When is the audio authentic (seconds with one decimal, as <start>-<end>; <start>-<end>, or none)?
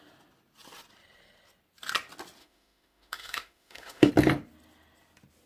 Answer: 0.0-2.4; 4.1-5.5